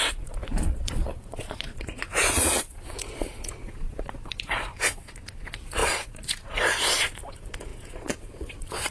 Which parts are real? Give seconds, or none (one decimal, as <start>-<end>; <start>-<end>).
none